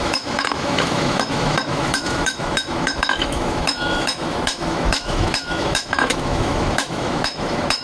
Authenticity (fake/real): fake